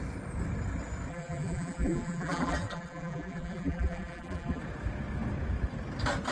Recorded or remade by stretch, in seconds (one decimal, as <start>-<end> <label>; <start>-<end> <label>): 0.0-1.1 recorded; 1.1-4.6 remade; 4.6-6.3 recorded